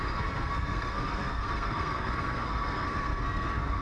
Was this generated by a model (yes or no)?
yes